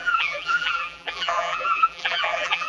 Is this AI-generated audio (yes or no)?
yes